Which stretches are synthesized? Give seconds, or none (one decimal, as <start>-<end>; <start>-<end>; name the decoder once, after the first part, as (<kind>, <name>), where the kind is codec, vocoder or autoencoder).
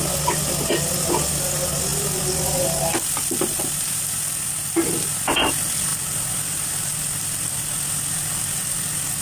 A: none